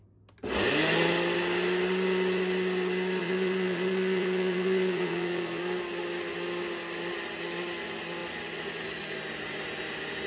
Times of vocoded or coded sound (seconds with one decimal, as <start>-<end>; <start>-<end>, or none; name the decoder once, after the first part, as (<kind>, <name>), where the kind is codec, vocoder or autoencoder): 3.2-5.6 (vocoder, Vocos)